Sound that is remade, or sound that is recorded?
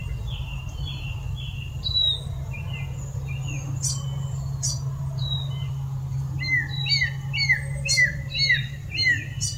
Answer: recorded